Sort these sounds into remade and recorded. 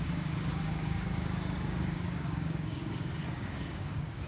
remade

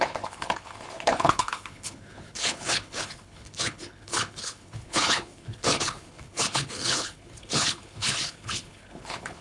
remade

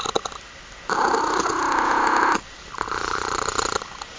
recorded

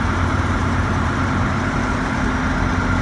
recorded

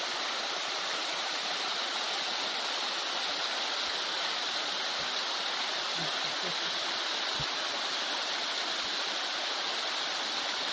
recorded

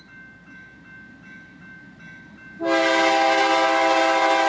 recorded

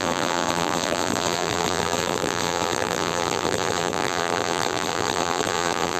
remade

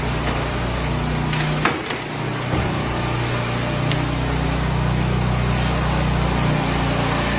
recorded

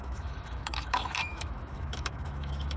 remade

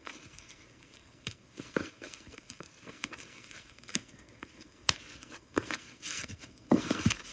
remade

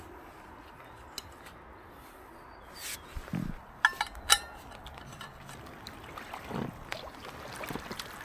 recorded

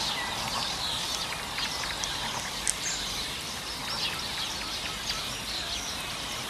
recorded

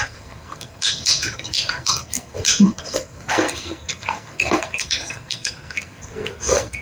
remade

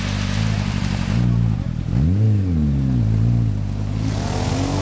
recorded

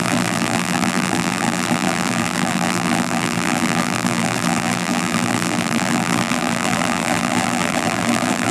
remade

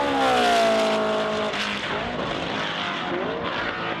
recorded